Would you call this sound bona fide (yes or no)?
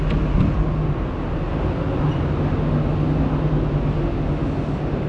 yes